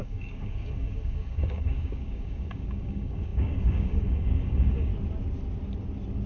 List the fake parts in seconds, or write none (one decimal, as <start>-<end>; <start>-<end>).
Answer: 0.0-4.9